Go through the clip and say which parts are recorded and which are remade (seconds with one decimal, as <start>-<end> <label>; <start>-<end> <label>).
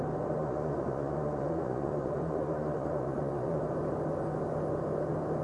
0.0-0.4 recorded; 0.4-3.6 remade; 3.6-5.4 recorded